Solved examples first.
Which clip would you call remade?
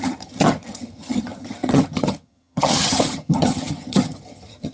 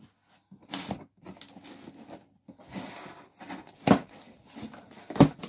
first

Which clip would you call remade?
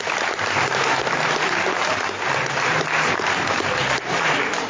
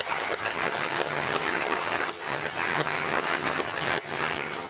second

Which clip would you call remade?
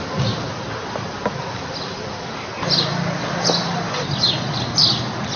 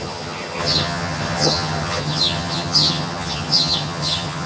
second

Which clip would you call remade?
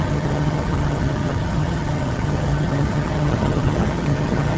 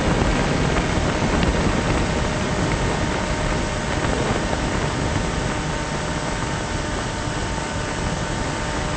first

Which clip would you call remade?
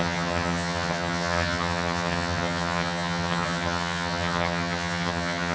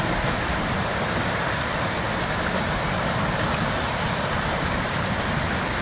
first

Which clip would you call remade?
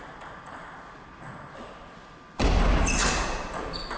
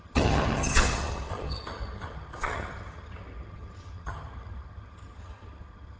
second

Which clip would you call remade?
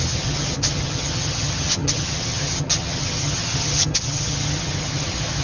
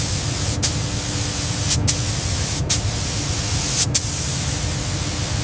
first